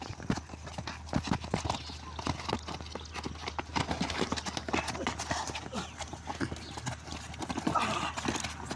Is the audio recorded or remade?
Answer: recorded